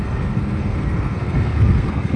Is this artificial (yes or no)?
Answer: yes